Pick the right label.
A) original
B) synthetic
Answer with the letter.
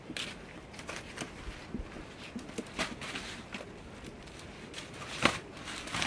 A